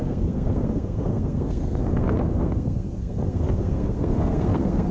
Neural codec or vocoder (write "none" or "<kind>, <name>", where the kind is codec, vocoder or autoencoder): codec, SNAC